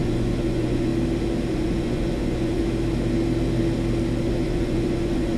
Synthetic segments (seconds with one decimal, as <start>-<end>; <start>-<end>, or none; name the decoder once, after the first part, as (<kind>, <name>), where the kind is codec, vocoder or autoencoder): 0.0-0.9 (vocoder, Vocos); 1.5-2.6; 4.2-5.4